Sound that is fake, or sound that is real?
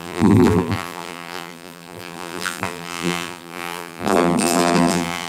fake